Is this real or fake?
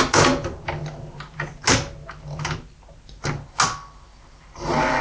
real